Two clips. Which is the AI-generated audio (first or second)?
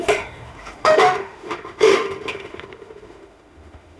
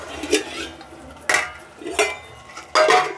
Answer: first